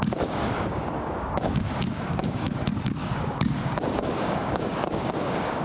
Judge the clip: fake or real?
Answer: fake